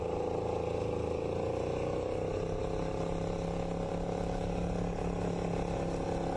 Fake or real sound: real